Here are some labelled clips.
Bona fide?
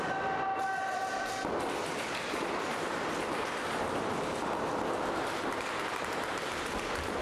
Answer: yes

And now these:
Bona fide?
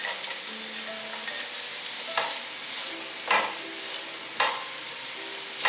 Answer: yes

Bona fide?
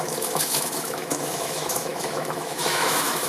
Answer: no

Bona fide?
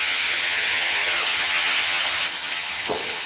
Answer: no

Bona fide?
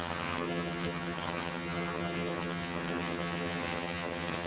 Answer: no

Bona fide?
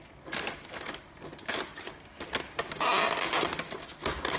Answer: yes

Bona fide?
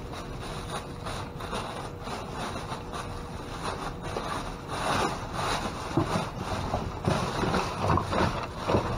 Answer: yes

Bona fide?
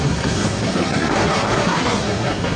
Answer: no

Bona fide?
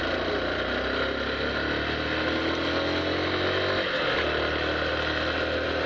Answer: yes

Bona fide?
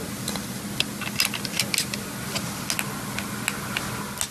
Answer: yes